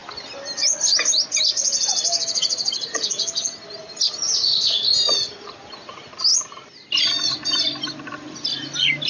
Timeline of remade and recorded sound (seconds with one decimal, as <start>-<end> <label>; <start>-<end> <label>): 0.0-9.1 recorded